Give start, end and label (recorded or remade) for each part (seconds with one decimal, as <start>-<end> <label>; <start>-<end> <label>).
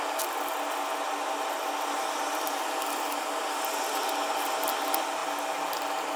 0.0-6.2 recorded